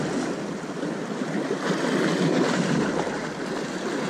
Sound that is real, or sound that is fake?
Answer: real